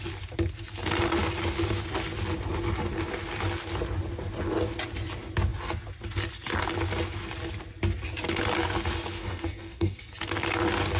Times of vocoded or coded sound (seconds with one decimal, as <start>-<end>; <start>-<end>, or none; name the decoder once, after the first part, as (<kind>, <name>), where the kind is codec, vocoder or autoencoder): 9.2-10.0 (codec, DAC)